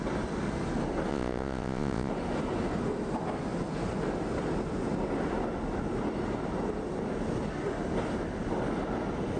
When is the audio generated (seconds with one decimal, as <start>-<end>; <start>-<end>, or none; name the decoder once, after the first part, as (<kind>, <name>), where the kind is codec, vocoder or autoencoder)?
1.1-2.1 (vocoder, Vocos)